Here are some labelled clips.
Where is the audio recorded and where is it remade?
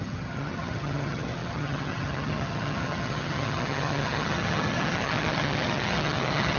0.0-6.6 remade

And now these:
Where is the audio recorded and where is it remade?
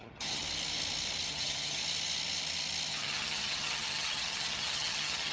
0.0-0.4 remade; 0.4-1.3 recorded; 1.3-1.8 remade; 1.8-2.9 recorded; 2.9-5.3 remade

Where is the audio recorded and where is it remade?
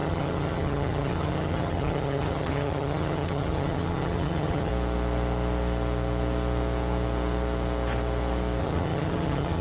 0.0-4.7 remade; 4.7-8.6 recorded; 8.6-9.6 remade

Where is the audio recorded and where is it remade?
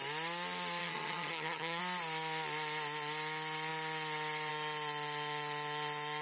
0.0-0.8 recorded; 0.8-1.8 remade; 1.8-6.2 recorded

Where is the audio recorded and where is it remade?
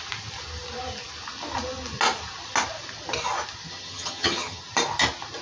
0.0-3.7 recorded; 3.7-4.6 remade; 4.6-5.4 recorded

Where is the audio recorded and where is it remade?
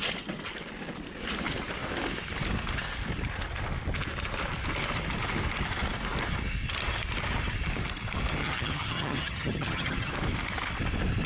0.0-8.4 recorded; 8.4-10.1 remade; 10.1-11.3 recorded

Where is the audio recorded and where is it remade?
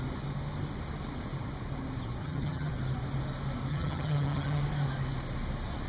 0.0-2.2 recorded; 2.2-2.7 remade; 2.7-3.7 recorded; 3.7-4.6 remade; 4.6-5.9 recorded